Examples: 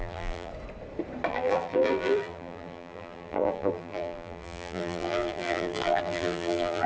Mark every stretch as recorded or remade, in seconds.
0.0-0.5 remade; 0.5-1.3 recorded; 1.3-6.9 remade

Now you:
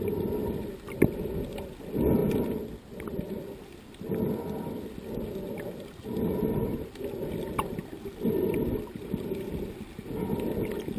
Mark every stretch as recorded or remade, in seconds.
0.0-11.0 recorded

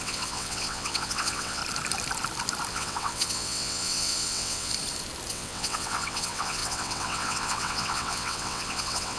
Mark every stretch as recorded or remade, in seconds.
0.0-1.6 remade; 1.6-2.7 recorded; 2.7-4.7 remade; 4.7-5.3 recorded; 5.3-9.2 remade

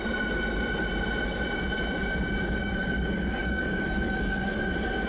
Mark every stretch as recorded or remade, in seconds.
0.0-2.6 recorded; 2.6-4.5 remade; 4.5-5.1 recorded

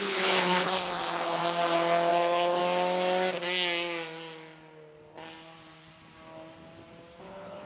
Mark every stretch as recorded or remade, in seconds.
0.0-1.4 remade; 1.4-2.1 recorded; 2.1-2.6 remade; 2.6-7.2 recorded; 7.2-7.7 remade

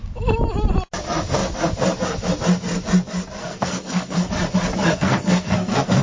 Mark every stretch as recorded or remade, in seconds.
0.0-3.4 recorded; 3.4-4.3 remade; 4.3-4.8 recorded; 4.8-6.0 remade

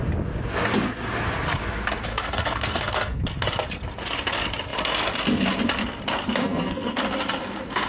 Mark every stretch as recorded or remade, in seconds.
0.0-2.1 recorded; 2.1-3.2 remade; 3.2-6.4 recorded; 6.4-7.0 remade; 7.0-7.9 recorded

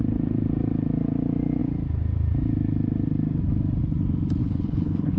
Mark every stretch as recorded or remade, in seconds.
0.0-4.4 recorded; 4.4-5.2 remade